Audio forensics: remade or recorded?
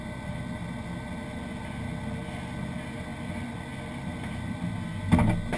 recorded